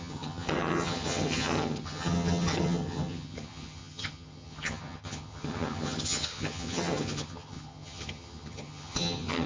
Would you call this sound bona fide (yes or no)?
no